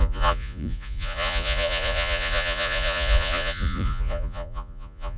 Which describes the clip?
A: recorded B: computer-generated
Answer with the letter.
B